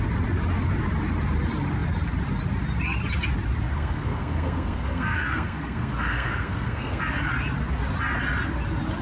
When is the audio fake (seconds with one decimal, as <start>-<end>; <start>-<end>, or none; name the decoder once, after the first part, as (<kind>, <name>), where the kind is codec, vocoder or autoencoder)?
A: 3.7-7.0 (codec, SNAC)